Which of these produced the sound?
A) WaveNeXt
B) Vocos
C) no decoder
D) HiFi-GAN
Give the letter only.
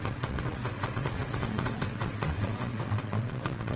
A